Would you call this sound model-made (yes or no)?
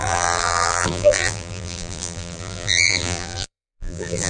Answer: yes